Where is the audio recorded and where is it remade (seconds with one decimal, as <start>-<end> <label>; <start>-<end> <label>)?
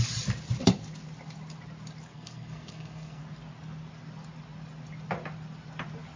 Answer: 0.0-2.1 recorded; 2.1-3.2 remade; 3.2-6.2 recorded